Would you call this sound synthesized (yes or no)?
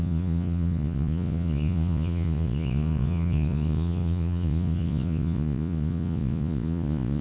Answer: yes